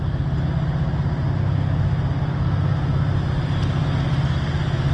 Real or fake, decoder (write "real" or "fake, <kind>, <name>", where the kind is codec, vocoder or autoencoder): real